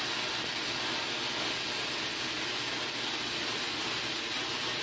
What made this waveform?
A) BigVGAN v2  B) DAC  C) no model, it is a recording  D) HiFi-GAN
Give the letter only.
C